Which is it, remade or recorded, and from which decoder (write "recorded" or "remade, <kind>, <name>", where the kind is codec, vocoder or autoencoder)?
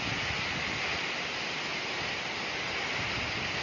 recorded